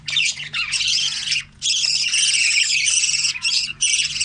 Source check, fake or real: fake